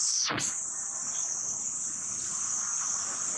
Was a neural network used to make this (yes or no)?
no